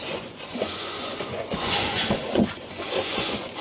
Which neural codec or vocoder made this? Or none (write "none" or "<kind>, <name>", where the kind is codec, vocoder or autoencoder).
vocoder, Vocos